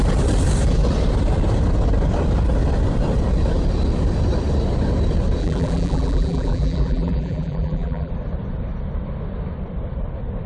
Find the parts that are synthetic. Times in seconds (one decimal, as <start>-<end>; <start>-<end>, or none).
5.4-8.1